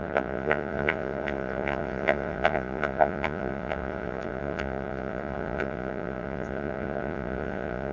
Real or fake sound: fake